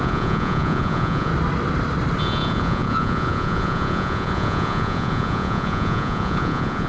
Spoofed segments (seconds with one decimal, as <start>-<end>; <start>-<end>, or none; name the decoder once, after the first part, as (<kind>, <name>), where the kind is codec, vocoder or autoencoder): 0.0-1.3 (vocoder, Vocos); 2.2-6.9